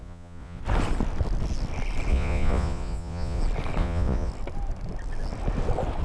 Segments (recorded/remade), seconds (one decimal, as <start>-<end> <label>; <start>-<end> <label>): 0.0-0.6 remade; 0.6-2.1 recorded; 2.1-3.4 remade; 3.4-3.8 recorded; 3.8-4.3 remade; 4.3-6.0 recorded